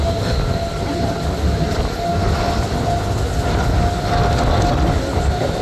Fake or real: real